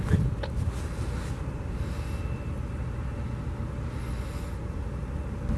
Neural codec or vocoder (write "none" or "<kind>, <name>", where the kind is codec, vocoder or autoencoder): none